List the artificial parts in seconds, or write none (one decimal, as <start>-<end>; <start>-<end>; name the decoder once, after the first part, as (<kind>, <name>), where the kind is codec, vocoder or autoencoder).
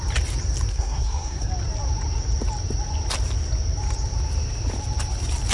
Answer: 0.7-1.5 (codec, SNAC)